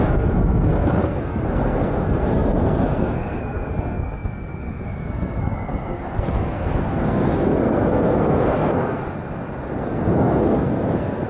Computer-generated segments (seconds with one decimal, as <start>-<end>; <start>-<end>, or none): 0.0-9.0; 9.8-11.3

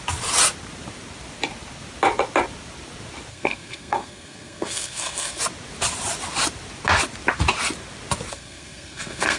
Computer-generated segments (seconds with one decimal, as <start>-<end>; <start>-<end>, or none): 3.3-5.4; 8.3-9.4